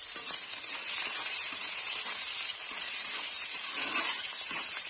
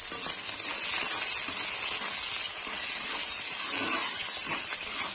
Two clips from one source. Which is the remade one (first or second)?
first